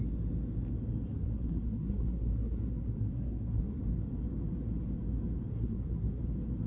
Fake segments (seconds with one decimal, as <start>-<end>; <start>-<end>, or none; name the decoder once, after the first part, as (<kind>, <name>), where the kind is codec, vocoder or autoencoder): 1.1-3.8 (codec, SNAC); 5.5-6.2

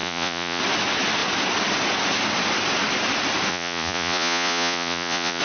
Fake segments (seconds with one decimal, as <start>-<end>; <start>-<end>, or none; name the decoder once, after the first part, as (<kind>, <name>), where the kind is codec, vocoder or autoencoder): 0.0-0.6 (vocoder, Vocos); 3.5-5.4

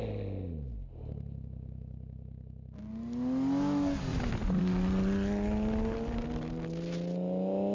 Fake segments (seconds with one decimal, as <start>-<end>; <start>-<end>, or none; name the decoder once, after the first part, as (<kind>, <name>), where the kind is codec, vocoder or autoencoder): 4.1-4.6 (vocoder, BigVGAN v2)

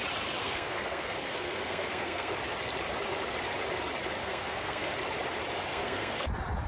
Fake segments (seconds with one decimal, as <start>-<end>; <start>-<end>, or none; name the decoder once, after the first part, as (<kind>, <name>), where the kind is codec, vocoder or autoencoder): 0.4-2.3 (codec, SNAC); 4.2-4.9; 5.7-6.3

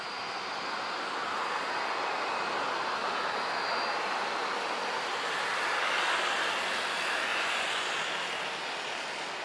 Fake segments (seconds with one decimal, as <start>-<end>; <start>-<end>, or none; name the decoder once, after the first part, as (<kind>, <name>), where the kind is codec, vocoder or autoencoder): 7.3-7.9 (vocoder, Vocos)